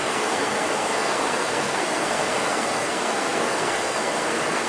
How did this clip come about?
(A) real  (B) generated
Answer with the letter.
B